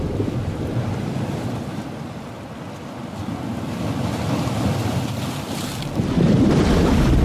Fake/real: real